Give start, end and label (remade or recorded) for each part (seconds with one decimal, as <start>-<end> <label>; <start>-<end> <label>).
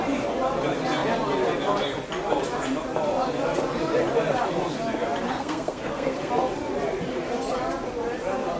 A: 0.0-5.3 recorded; 5.3-6.3 remade; 6.3-8.6 recorded